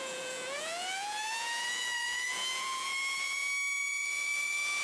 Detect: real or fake fake